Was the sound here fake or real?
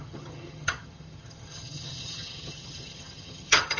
fake